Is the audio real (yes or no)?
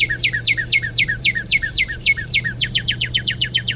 no